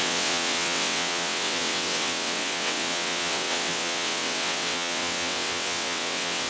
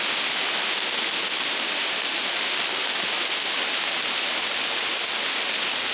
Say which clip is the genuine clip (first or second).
second